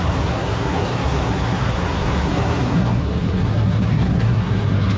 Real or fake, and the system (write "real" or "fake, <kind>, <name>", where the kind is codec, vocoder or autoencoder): fake, codec, SNAC